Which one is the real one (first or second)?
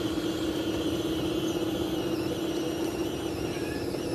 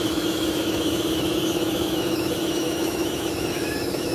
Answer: first